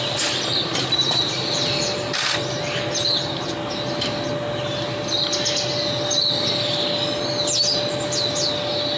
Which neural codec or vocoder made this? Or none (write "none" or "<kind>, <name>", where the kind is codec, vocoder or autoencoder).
none